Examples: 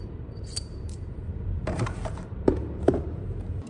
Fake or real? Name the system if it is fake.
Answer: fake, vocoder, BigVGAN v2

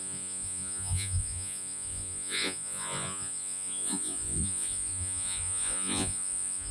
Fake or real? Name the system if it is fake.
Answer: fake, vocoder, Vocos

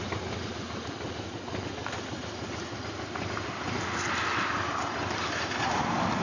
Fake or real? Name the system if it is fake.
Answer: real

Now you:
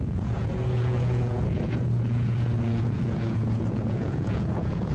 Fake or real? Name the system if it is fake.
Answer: fake, vocoder, Vocos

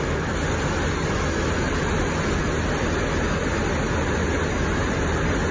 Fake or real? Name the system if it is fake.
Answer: real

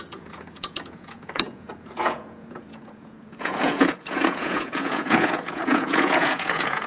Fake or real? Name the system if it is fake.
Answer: fake, vocoder, Vocos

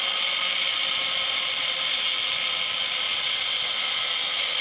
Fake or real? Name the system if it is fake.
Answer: real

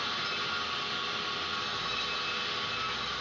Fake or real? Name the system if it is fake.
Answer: real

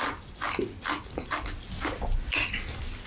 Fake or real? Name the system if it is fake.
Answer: real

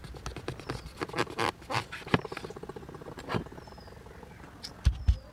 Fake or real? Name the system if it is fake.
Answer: real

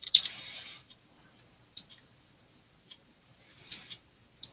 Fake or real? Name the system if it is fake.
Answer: fake, vocoder, BigVGAN v2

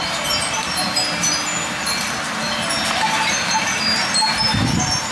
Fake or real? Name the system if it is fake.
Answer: fake, vocoder, BigVGAN v2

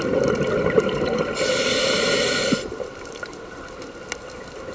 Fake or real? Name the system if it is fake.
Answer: real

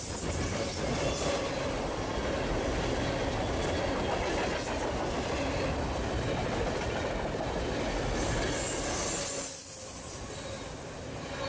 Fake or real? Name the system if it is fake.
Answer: real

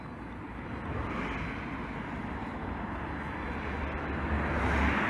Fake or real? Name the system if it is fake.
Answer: real